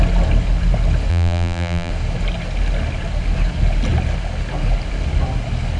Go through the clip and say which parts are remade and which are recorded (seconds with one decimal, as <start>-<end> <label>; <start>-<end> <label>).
0.0-1.1 recorded; 1.1-1.9 remade; 1.9-5.8 recorded